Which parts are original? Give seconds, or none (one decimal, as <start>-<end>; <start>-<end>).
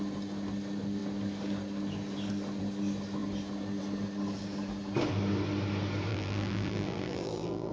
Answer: 0.0-6.1